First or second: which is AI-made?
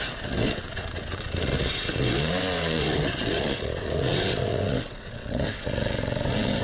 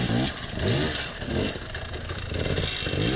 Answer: first